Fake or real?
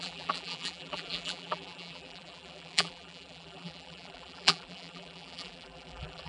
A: fake